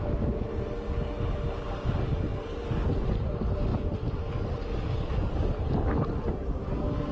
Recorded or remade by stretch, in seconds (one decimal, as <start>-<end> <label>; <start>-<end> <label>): 0.0-3.7 recorded; 3.7-4.3 remade; 4.3-5.2 recorded; 5.2-6.5 remade; 6.5-7.1 recorded